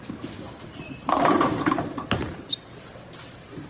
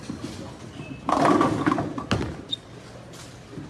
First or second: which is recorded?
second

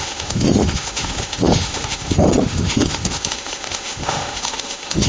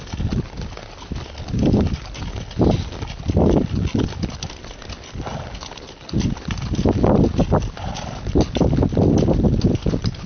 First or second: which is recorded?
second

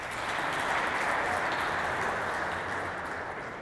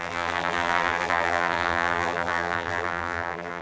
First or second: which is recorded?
first